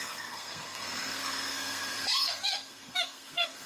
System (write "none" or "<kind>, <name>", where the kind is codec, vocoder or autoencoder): codec, SNAC